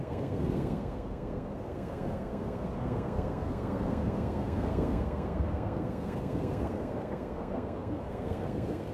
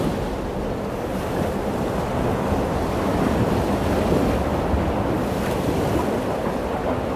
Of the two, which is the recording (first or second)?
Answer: second